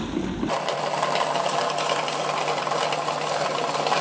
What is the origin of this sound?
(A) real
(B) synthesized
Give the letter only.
A